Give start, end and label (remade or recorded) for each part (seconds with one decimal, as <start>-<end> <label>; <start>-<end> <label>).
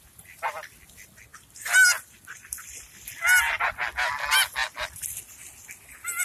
0.0-4.6 recorded; 4.6-5.2 remade; 5.2-6.2 recorded